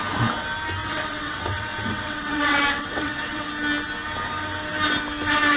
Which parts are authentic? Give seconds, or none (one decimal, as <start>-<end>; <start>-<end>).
0.0-0.8; 3.5-5.6